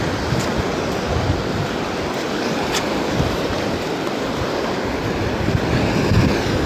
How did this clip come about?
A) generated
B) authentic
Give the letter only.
B